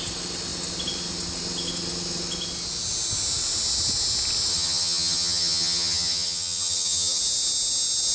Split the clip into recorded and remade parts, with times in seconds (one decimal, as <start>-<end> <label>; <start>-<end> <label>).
0.0-4.5 recorded; 4.5-7.2 remade; 7.2-8.1 recorded